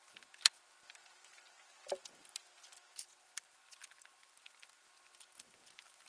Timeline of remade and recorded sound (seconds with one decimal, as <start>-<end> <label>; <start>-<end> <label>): 0.0-6.1 recorded